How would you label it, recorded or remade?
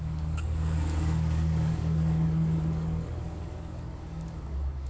remade